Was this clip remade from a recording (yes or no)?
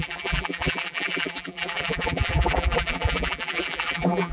yes